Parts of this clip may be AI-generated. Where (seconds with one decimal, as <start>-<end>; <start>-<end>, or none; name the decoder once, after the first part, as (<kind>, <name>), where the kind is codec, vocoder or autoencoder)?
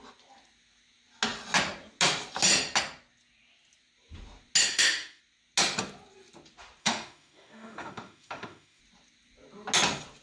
4.6-5.2 (autoencoder, DAC-VAE); 6.8-8.8